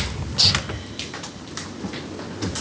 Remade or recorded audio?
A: recorded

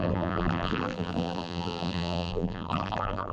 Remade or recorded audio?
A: remade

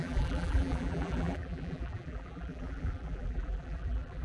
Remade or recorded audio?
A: remade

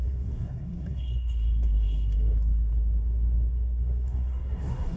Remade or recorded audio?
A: remade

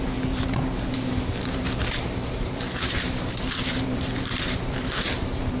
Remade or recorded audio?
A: remade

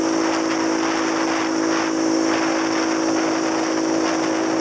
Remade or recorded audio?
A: recorded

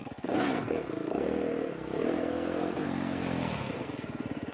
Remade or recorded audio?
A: remade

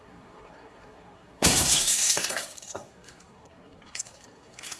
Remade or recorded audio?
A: remade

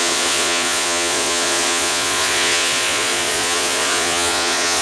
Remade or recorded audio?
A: remade